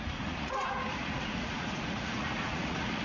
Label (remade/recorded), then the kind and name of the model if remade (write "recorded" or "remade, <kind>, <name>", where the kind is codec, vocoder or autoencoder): remade, vocoder, Vocos